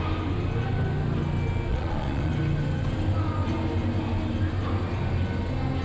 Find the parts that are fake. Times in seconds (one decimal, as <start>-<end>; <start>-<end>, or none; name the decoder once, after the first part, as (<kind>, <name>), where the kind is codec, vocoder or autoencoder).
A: 1.7-2.3 (vocoder, Vocos)